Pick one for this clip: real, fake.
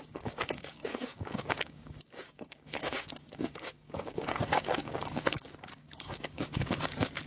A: fake